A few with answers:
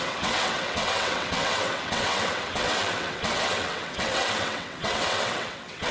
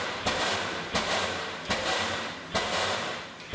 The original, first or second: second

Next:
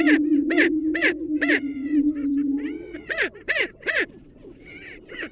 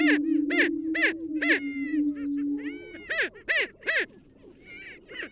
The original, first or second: second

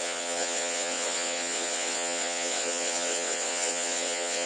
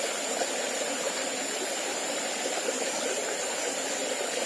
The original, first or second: second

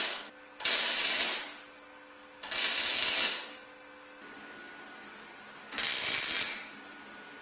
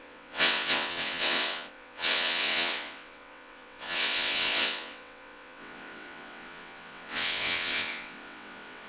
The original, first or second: first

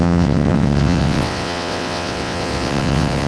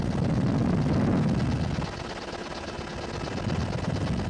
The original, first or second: second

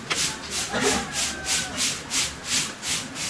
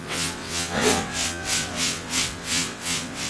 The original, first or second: first